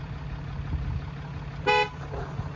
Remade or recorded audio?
recorded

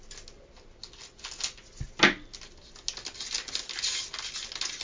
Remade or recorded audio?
recorded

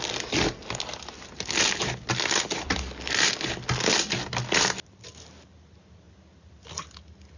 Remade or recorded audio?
recorded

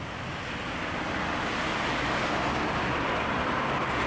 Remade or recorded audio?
recorded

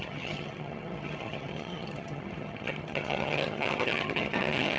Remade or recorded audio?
remade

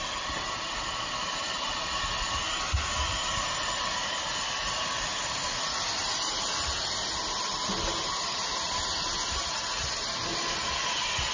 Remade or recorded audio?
recorded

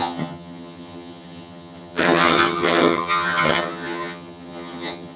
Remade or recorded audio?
remade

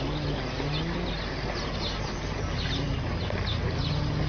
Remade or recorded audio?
recorded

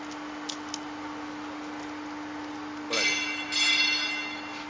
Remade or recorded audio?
recorded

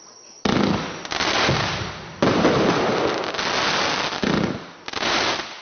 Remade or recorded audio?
recorded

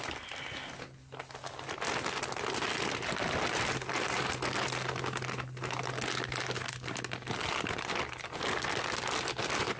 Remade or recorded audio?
recorded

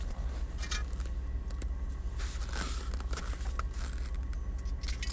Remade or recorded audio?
recorded